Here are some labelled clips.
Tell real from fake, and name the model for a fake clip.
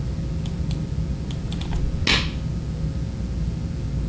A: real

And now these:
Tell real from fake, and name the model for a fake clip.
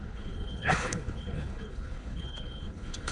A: fake, codec, HILCodec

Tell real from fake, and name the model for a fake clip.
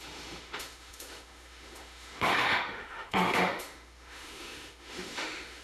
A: fake, autoencoder, DAC-VAE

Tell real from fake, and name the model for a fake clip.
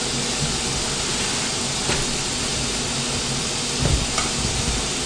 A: real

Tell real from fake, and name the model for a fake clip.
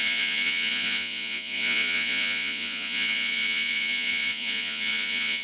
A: fake, vocoder, Vocos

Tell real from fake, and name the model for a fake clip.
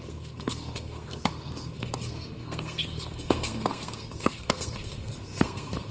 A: fake, codec, SNAC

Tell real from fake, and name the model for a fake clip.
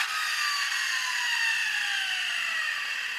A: real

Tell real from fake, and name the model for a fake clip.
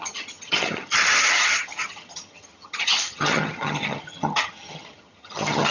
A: fake, vocoder, HiFi-GAN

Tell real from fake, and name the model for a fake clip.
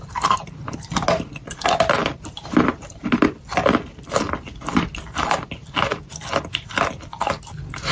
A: real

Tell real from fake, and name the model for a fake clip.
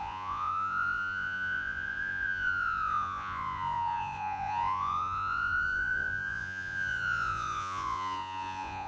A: fake, vocoder, Vocos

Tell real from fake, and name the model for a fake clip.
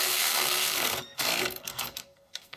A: fake, codec, SNAC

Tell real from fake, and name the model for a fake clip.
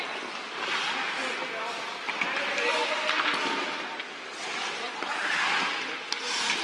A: real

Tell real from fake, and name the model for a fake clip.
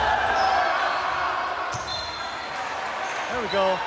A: real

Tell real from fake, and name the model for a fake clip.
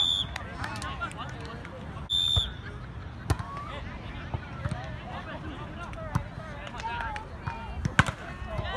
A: real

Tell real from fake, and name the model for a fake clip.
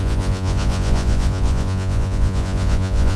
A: fake, vocoder, Vocos